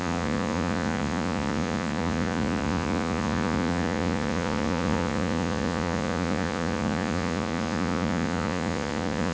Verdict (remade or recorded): remade